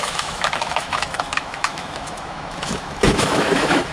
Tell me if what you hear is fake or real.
fake